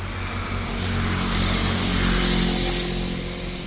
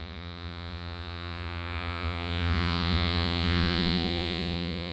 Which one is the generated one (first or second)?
second